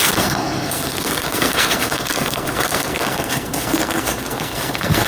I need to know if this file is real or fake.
fake